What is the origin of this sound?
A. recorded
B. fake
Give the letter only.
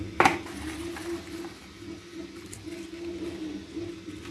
A